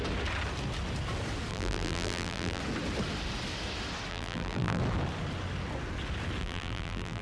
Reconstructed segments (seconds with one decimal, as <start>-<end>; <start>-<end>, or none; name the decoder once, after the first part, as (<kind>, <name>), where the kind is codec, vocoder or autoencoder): 1.5-2.6 (vocoder, BigVGAN v2); 4.1-4.8; 6.4-7.2